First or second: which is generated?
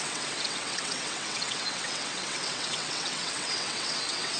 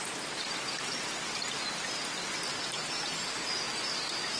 first